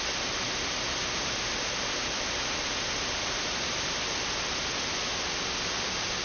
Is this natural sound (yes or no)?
yes